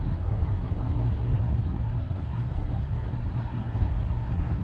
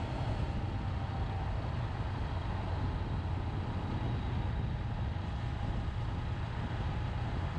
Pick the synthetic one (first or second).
first